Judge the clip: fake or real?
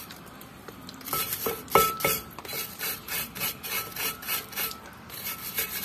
fake